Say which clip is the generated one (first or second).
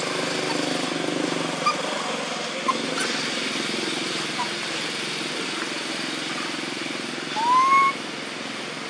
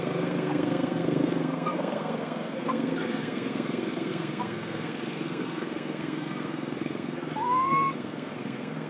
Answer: second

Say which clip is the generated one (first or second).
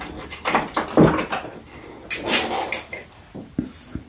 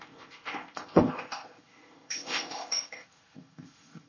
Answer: second